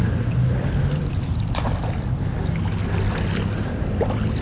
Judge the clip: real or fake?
real